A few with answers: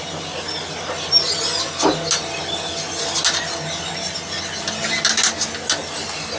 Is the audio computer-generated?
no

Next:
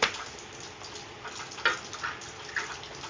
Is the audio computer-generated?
no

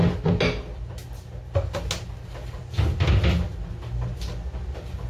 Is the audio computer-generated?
no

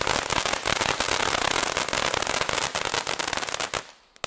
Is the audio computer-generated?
no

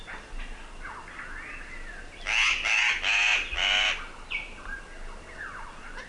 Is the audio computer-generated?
no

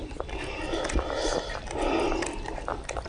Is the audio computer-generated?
no